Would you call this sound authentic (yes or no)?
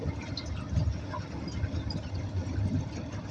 yes